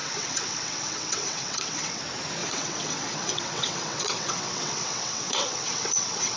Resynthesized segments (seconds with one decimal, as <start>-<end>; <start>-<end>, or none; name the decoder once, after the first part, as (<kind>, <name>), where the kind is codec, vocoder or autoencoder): 0.0-2.0 (vocoder, WaveNeXt); 2.4-6.4